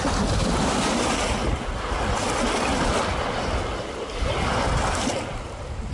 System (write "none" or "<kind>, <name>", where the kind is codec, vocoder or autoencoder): none